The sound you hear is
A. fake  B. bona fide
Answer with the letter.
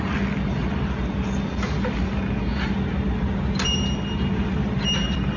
B